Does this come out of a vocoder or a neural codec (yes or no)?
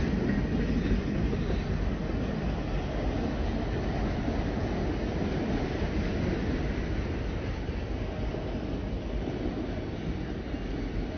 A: no